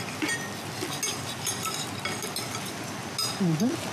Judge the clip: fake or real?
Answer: real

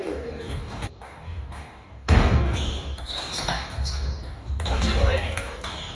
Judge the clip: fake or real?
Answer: fake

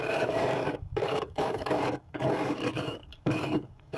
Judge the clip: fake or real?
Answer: fake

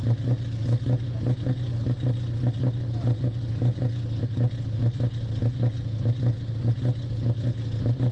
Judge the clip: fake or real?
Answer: real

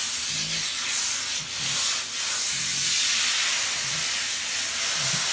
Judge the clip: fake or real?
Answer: real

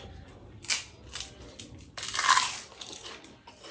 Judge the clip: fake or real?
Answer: real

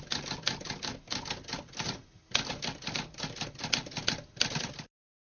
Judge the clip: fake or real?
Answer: real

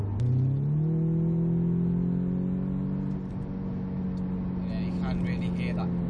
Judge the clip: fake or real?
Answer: real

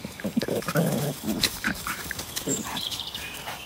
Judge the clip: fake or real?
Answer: fake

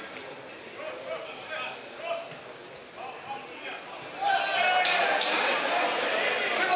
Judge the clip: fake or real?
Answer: real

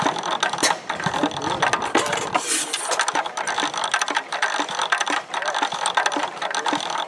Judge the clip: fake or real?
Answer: real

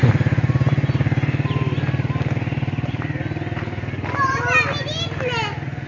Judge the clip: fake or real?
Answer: real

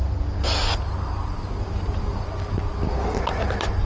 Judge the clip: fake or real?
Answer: real